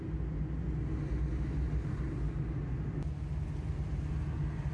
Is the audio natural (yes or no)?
yes